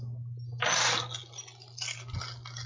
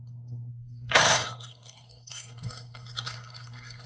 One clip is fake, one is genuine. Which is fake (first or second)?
second